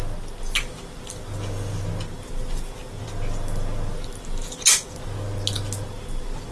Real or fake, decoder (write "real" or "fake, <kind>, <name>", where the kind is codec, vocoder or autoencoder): real